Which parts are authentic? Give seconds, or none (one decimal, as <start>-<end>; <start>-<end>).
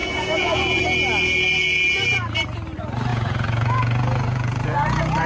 0.8-3.1